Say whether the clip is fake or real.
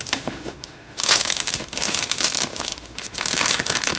fake